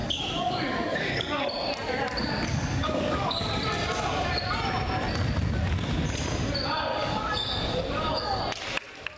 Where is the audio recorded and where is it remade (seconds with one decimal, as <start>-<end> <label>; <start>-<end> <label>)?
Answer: 0.0-1.5 remade; 1.5-2.5 recorded; 2.5-3.5 remade; 3.5-6.9 recorded; 6.9-8.4 remade; 8.4-9.2 recorded

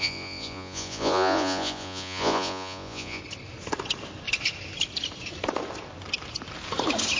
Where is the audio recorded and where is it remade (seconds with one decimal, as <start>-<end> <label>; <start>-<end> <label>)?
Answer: 0.0-3.2 remade; 3.2-7.2 recorded

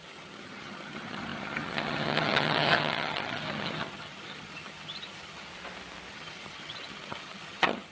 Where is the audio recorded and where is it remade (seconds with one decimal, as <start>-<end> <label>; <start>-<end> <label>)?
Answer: 0.0-5.5 remade; 5.5-6.1 recorded; 6.1-7.9 remade

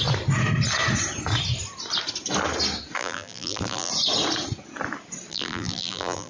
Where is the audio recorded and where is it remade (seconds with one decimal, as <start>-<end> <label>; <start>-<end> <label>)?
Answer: 0.0-3.0 recorded; 3.0-3.9 remade; 3.9-5.3 recorded; 5.3-6.3 remade

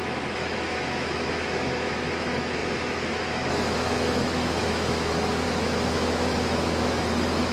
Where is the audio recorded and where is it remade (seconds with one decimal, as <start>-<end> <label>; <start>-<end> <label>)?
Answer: 0.0-7.5 remade

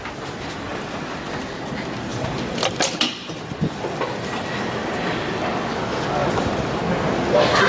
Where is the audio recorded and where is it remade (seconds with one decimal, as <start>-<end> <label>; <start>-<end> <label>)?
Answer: 0.0-0.7 recorded; 0.7-1.2 remade; 1.2-2.1 recorded; 2.1-4.4 remade; 4.4-6.2 recorded; 6.2-6.8 remade; 6.8-7.7 recorded

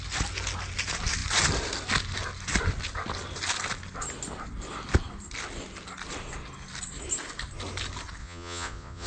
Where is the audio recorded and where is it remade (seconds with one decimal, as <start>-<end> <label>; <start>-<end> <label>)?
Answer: 0.0-8.2 recorded; 8.2-9.1 remade

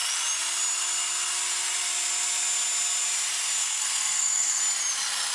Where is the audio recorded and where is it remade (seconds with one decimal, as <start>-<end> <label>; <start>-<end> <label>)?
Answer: 0.0-3.6 recorded; 3.6-4.6 remade; 4.6-5.3 recorded